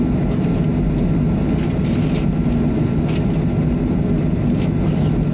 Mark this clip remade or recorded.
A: recorded